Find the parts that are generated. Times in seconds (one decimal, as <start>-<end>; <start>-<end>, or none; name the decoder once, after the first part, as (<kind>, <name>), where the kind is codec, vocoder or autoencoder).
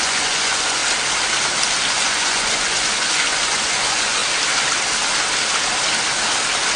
0.0-0.8 (vocoder, Vocos); 1.9-4.2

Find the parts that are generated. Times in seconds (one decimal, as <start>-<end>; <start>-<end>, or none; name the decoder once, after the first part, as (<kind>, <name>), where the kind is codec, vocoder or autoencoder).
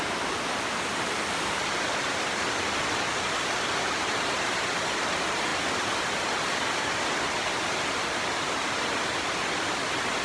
none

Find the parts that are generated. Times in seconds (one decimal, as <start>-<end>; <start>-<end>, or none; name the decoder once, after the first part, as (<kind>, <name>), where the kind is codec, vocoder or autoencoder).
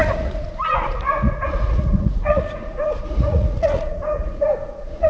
0.0-5.1 (vocoder, Vocos)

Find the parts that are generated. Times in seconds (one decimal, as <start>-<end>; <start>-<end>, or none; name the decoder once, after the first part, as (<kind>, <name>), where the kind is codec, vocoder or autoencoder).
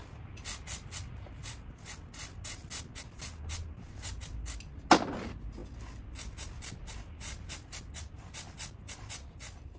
none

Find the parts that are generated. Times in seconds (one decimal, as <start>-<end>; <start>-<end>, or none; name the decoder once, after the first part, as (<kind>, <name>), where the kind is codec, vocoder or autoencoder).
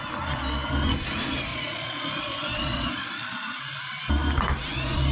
1.5-3.6 (vocoder, Vocos)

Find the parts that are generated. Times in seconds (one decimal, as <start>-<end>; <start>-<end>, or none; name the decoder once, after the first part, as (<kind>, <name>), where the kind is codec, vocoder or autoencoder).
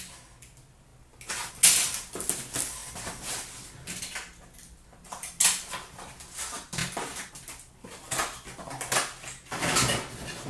none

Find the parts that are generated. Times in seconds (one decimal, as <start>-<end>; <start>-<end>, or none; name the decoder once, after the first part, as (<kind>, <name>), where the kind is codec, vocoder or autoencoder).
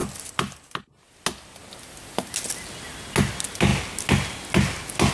none